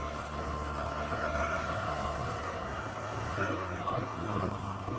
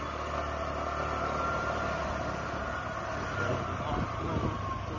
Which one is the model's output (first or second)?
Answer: first